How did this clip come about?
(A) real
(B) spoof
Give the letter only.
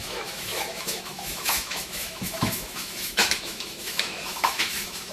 B